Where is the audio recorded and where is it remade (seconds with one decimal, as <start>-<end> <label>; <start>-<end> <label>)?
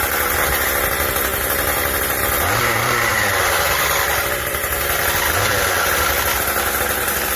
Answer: 0.0-3.1 recorded; 3.1-5.0 remade; 5.0-7.4 recorded